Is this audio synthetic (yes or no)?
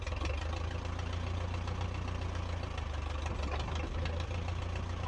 no